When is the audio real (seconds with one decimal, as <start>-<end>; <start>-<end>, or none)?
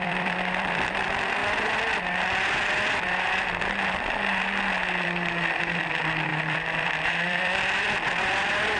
1.4-4.7